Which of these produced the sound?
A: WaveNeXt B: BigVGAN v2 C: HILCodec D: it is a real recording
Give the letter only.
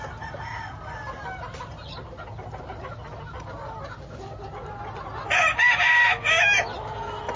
D